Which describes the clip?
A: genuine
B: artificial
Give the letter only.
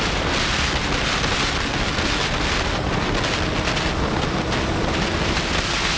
A